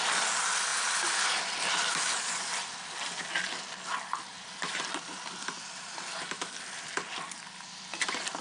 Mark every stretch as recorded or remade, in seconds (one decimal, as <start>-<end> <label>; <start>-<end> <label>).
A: 0.0-8.4 recorded